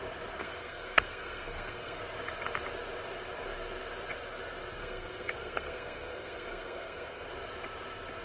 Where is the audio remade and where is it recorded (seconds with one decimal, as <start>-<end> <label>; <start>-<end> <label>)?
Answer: 0.0-0.4 recorded; 0.4-2.0 remade; 2.0-4.8 recorded; 4.8-7.3 remade; 7.3-8.2 recorded